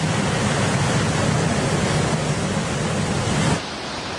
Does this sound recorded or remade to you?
recorded